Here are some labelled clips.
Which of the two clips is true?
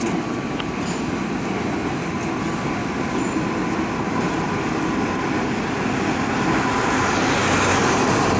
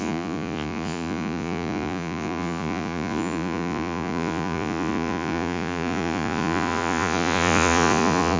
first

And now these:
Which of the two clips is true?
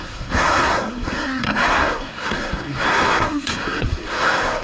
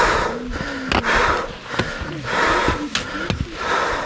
second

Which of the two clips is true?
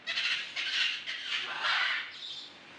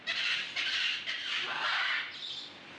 first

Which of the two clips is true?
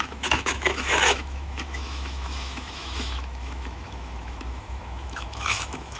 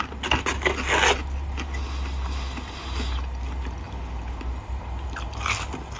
second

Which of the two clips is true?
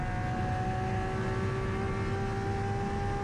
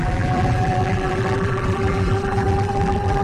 first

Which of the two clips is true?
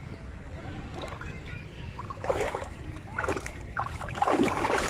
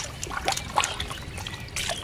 second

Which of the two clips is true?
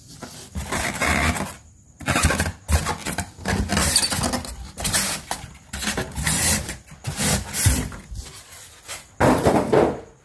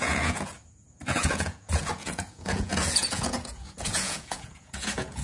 first